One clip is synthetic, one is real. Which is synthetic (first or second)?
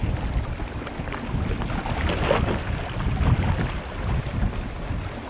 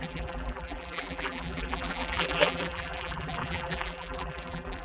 second